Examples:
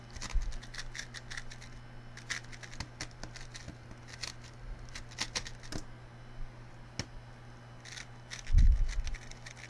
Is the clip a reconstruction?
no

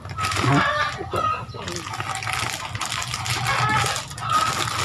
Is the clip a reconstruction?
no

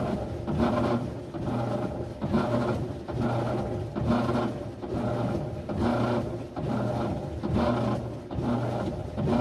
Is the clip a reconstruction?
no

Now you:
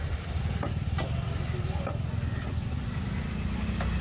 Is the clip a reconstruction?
no